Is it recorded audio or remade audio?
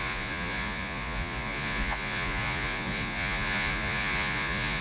remade